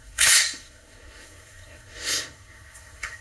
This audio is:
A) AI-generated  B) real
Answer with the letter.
A